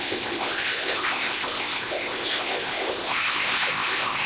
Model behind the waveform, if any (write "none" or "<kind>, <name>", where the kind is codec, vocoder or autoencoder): codec, ZipCodec